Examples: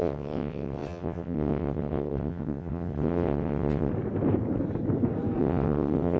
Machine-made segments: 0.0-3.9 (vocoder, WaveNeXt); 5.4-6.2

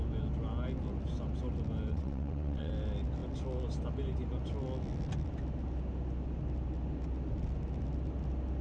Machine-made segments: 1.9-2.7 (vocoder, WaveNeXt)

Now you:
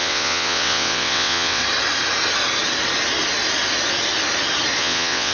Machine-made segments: 0.0-1.6 (vocoder, WaveNeXt); 4.8-5.3

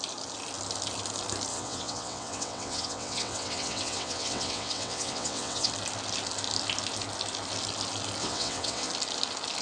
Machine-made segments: 1.5-5.7 (vocoder, WaveNeXt); 8.2-8.9